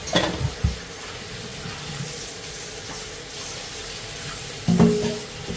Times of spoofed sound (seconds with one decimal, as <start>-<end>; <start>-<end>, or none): none